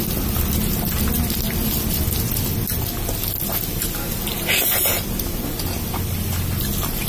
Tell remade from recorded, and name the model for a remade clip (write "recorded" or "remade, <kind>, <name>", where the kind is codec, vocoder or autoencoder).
recorded